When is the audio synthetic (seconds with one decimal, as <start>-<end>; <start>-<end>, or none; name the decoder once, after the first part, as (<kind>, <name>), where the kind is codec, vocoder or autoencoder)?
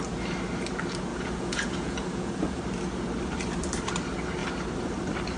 1.1-2.6 (vocoder, Vocos)